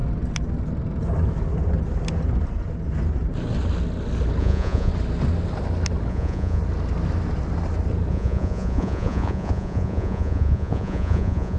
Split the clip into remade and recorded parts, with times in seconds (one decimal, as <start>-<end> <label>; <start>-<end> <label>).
0.0-4.4 recorded; 4.4-4.9 remade; 4.9-6.1 recorded; 6.1-6.6 remade; 6.6-8.1 recorded; 8.1-11.6 remade